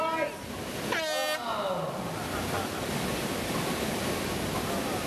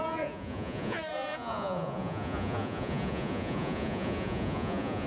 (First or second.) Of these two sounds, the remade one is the second